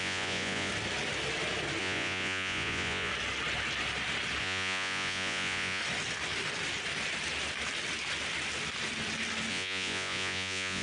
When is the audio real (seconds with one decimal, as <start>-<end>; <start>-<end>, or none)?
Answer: 0.7-1.8; 3.1-4.4; 5.8-9.5